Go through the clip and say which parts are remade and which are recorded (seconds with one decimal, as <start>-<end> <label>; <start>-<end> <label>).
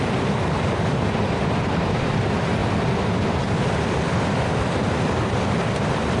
0.0-6.2 recorded